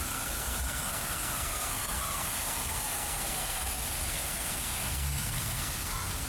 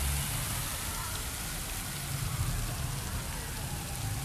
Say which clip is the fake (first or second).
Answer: first